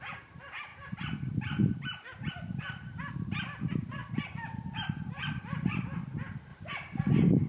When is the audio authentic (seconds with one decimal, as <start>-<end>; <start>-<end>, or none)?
0.0-0.7; 2.3-4.0; 5.1-6.5; 7.1-7.5